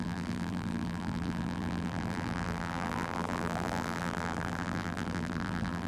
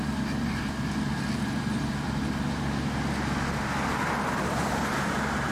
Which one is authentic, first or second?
second